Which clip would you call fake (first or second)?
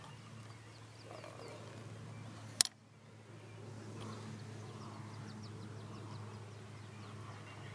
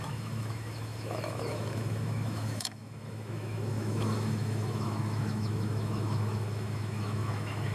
second